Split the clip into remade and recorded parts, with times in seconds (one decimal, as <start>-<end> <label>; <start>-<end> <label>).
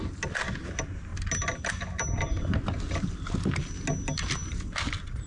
0.0-5.3 recorded